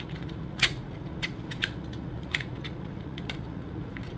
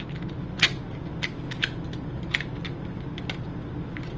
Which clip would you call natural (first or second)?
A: second